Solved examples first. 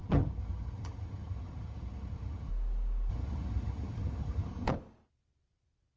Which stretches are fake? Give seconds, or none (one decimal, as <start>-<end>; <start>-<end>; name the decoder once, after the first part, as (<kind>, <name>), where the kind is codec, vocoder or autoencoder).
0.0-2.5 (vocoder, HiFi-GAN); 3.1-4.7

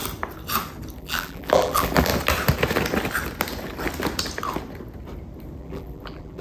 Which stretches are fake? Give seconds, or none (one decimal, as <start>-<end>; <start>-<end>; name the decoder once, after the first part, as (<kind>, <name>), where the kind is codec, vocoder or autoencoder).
1.0-2.1 (vocoder, BigVGAN v2); 5.6-6.4

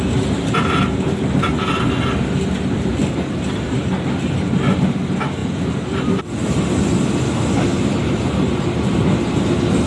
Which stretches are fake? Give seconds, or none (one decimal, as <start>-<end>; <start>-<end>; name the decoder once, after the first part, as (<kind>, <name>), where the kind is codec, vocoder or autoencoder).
3.0-3.5 (vocoder, BigVGAN v2); 5.4-6.2

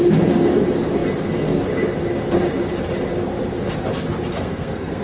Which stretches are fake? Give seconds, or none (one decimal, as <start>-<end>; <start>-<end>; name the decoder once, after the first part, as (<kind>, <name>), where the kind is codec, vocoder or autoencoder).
4.3-5.0 (codec, SNAC)